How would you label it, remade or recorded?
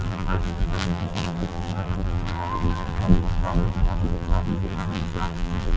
remade